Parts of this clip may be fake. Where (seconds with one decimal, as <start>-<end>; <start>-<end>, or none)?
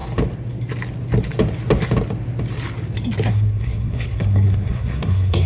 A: 3.3-5.5